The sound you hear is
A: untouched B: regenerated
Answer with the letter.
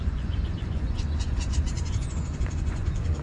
B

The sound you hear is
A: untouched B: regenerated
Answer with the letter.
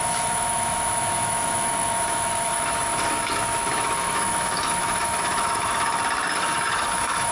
B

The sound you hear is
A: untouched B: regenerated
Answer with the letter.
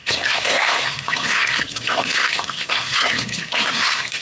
B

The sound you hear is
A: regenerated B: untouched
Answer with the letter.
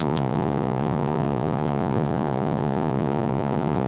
A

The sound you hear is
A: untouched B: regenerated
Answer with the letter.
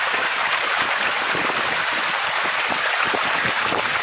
B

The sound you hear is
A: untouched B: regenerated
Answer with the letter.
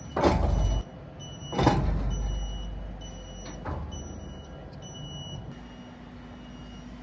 A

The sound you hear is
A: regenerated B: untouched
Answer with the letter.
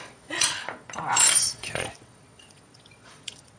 A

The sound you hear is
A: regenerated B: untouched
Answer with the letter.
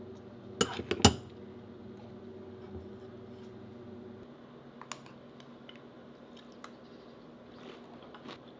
B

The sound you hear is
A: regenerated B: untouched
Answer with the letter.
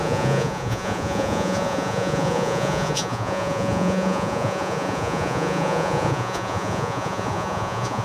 A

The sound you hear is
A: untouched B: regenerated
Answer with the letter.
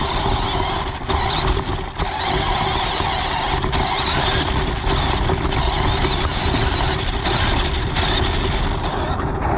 A